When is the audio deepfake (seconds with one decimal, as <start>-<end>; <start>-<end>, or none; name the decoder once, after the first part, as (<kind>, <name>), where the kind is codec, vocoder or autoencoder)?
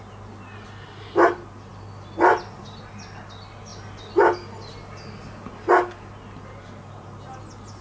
none